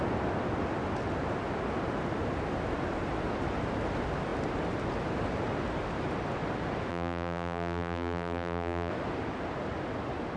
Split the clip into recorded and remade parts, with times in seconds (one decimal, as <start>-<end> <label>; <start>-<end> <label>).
0.0-6.9 recorded; 6.9-8.9 remade; 8.9-10.4 recorded